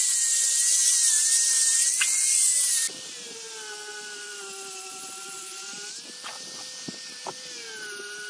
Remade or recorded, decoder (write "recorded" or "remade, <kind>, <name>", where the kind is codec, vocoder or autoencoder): recorded